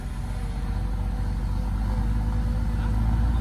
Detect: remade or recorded recorded